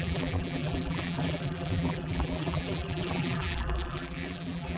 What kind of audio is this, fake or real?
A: fake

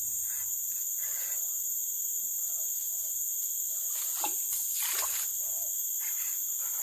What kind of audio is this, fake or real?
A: real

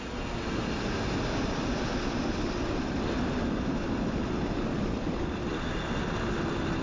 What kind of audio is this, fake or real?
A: real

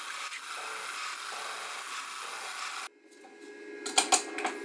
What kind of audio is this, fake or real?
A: real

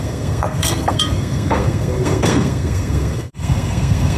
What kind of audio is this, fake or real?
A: fake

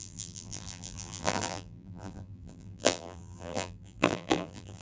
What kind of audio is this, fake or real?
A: fake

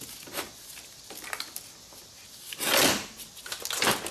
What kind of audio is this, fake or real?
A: real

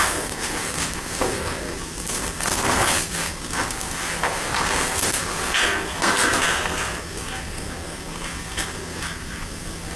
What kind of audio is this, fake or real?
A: fake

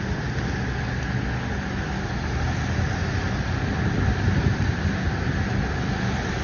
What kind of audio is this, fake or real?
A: real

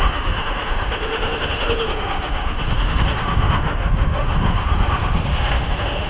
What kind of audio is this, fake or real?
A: fake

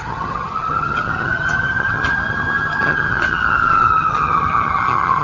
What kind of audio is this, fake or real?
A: fake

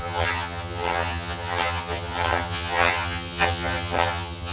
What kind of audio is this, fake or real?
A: fake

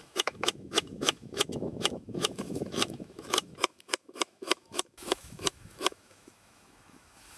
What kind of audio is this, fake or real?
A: fake